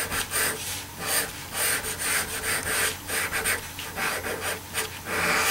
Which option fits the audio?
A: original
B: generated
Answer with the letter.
A